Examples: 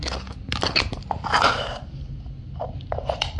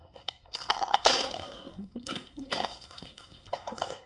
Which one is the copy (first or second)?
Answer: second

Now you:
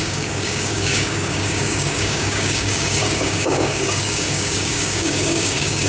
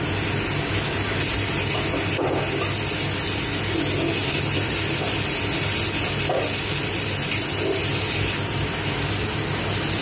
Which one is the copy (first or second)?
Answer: first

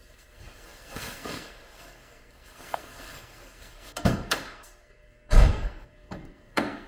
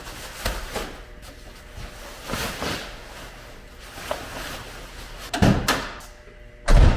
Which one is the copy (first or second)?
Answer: first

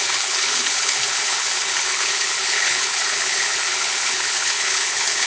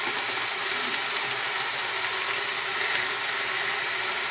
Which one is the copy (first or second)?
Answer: first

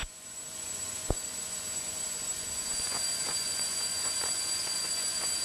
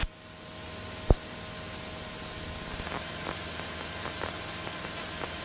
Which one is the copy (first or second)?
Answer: first